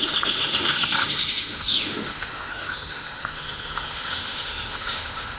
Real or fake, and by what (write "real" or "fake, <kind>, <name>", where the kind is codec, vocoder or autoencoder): fake, autoencoder, DAC-VAE